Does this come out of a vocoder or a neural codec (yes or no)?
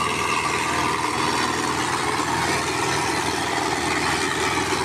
no